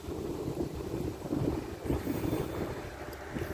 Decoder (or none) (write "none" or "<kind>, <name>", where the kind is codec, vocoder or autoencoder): none